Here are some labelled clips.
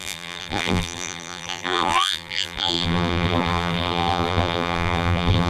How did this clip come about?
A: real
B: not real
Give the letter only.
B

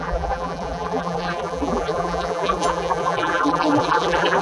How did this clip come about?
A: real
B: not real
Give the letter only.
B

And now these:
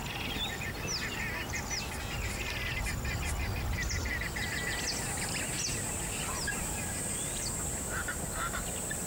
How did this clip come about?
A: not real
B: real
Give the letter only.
B